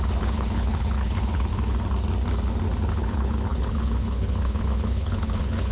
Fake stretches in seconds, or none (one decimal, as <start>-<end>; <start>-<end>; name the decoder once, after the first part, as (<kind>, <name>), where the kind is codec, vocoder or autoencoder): 0.0-1.5 (codec, HILCodec); 2.9-5.7